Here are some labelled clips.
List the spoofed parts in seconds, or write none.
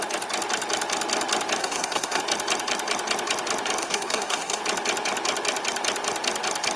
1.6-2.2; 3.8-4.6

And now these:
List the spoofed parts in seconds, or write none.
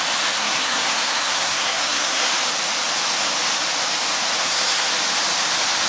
0.4-2.3; 4.4-4.9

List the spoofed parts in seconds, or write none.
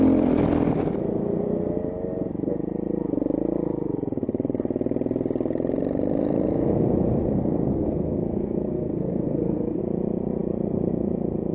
7.7-9.8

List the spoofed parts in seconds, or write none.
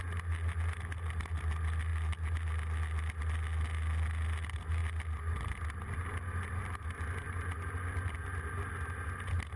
none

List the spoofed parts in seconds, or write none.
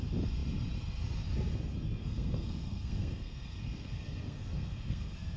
2.0-5.4